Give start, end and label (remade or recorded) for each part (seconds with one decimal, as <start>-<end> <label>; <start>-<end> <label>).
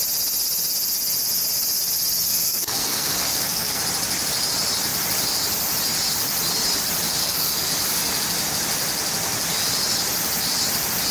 0.0-2.3 recorded; 2.3-3.8 remade; 3.8-7.2 recorded; 7.2-7.7 remade; 7.7-11.1 recorded